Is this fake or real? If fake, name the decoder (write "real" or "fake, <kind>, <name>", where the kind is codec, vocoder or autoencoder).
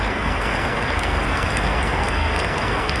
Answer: fake, codec, SNAC